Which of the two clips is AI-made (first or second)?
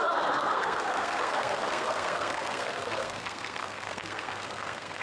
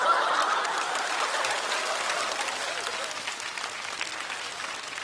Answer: first